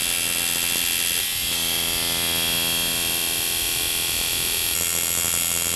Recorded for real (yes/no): yes